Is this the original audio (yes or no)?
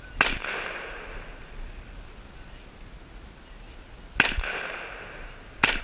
yes